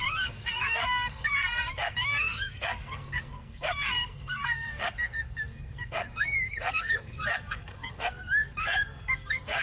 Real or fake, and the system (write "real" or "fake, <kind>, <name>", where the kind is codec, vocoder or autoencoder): fake, codec, SNAC